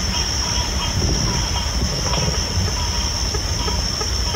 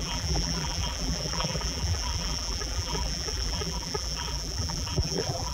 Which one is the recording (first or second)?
first